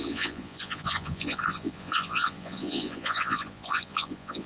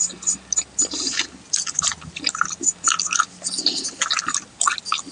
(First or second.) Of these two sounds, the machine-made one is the first